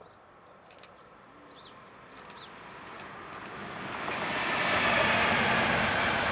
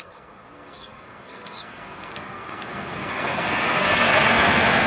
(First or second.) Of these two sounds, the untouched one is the first